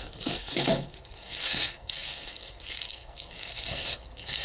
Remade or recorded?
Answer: remade